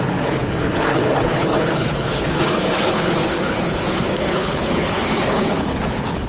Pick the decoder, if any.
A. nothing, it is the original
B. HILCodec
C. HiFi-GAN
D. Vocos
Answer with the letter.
B